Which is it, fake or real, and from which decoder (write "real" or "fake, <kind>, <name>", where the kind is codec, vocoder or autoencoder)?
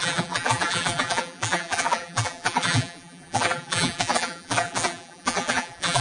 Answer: fake, vocoder, BigVGAN v2